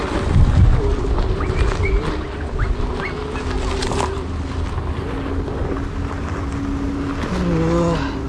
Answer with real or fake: real